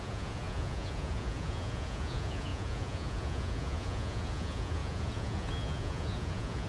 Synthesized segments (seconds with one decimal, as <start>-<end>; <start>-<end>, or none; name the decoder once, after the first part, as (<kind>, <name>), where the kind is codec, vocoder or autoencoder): 0.0-6.7 (vocoder, Vocos)